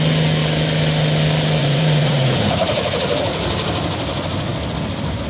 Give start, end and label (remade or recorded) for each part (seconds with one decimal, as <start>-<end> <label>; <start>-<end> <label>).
0.0-1.6 recorded; 1.6-3.4 remade; 3.4-5.3 recorded

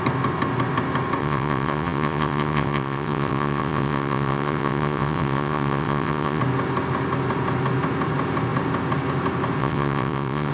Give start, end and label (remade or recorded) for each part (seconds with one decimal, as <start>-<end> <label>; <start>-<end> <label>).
0.0-1.2 recorded; 1.2-6.4 remade; 6.4-9.6 recorded; 9.6-10.5 remade

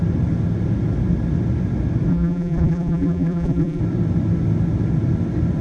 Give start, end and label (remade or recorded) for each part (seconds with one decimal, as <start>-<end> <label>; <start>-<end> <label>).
0.0-2.1 recorded; 2.1-3.8 remade; 3.8-5.6 recorded